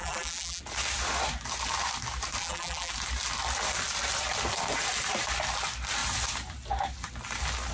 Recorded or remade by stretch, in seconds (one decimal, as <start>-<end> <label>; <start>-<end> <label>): 0.0-0.6 remade; 0.6-2.4 recorded; 2.4-2.9 remade; 2.9-7.7 recorded